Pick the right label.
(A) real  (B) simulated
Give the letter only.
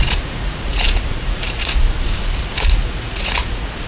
B